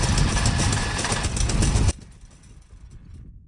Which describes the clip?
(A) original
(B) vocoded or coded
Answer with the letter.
A